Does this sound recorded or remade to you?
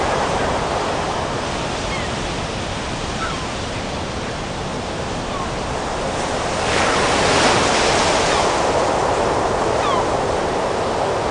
recorded